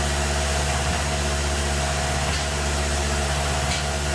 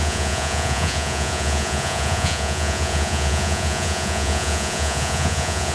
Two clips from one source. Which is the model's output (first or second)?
second